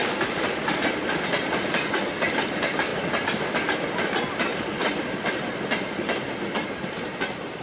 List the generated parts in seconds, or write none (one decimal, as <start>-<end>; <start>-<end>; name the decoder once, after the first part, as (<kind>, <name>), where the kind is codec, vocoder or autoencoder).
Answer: none